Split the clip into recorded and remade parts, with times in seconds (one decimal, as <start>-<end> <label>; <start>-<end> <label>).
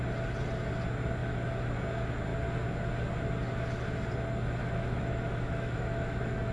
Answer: 0.0-1.2 recorded; 1.2-1.7 remade; 1.7-4.6 recorded; 4.6-6.5 remade